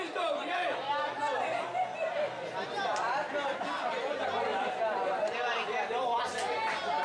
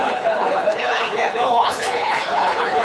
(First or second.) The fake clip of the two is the second